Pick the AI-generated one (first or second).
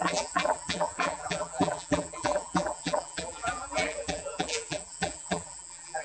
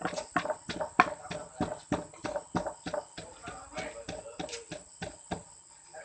first